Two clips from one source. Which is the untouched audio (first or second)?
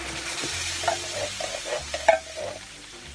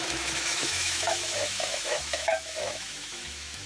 first